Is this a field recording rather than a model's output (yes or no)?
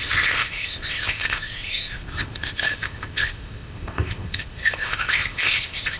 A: no